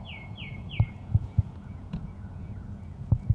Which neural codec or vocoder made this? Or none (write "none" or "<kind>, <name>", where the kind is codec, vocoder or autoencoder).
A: vocoder, Vocos